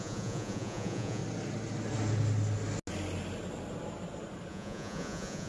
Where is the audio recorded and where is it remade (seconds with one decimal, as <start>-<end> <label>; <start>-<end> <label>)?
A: 0.0-1.2 remade; 1.2-4.5 recorded; 4.5-5.5 remade